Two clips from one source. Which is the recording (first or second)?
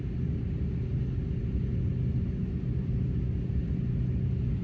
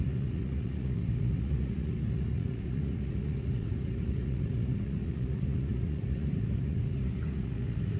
first